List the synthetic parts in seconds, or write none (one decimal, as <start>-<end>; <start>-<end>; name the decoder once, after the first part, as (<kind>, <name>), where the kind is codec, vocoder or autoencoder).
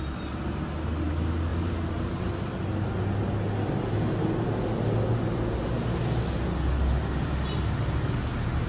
1.5-2.1 (vocoder, BigVGAN v2)